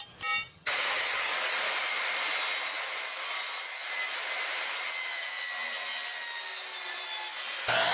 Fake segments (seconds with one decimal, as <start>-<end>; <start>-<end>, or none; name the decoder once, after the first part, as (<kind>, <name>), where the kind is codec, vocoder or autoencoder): 0.5-1.3 (vocoder, HiFi-GAN)